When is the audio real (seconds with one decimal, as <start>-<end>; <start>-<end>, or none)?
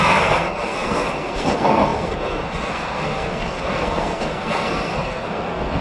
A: none